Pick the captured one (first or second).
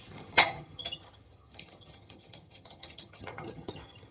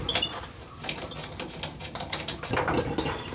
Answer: second